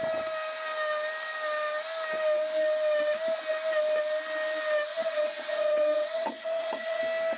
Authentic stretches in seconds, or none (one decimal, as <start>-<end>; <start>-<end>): 0.0-4.9; 7.0-7.4